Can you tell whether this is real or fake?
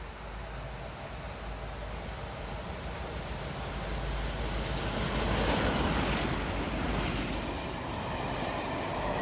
real